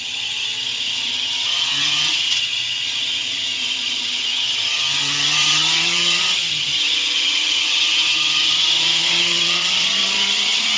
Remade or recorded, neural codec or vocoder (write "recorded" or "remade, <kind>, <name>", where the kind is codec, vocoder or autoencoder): remade, vocoder, HiFi-GAN